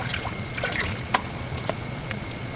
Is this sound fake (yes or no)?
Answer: yes